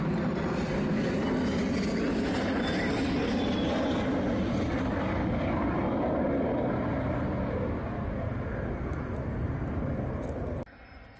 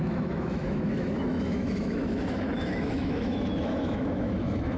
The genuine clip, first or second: first